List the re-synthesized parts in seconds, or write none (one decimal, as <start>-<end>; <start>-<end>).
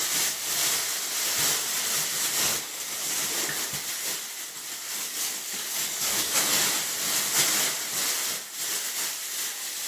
2.5-3.1; 5.0-6.7